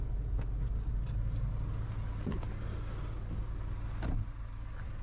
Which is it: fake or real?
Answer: real